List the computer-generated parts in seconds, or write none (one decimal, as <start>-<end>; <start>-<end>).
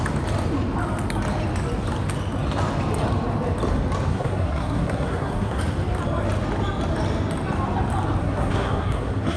4.1-5.6; 8.2-9.4